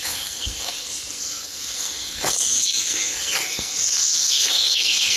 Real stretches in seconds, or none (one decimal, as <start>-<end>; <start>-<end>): none